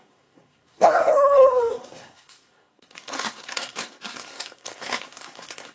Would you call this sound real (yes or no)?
no